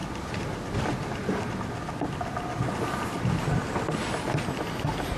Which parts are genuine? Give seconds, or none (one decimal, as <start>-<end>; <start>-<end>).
0.0-5.2